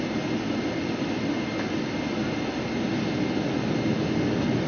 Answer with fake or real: real